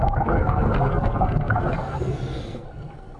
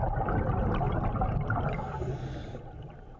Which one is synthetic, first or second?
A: first